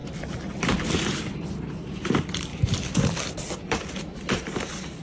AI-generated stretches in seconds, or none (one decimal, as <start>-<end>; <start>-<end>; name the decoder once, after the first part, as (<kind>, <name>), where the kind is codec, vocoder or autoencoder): none